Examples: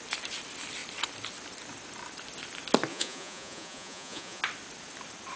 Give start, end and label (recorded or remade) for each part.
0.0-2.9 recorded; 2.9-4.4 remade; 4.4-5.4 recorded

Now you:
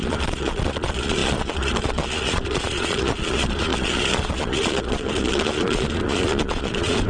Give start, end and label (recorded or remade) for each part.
0.0-7.1 remade